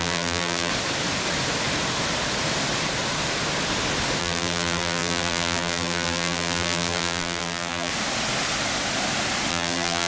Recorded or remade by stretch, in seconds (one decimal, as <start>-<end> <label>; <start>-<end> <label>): 0.0-0.7 remade; 0.7-4.2 recorded; 4.2-7.9 remade; 7.9-9.5 recorded; 9.5-10.1 remade